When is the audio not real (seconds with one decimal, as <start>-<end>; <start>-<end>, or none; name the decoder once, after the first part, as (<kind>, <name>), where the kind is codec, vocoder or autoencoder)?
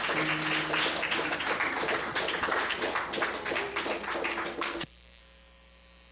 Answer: 4.5-5.2 (codec, SNAC)